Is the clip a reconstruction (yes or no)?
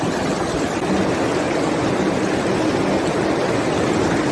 no